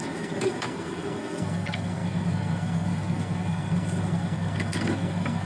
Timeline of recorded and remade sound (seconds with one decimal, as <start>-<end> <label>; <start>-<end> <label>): 0.0-5.5 remade